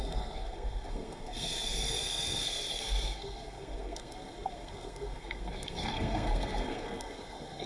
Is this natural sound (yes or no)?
no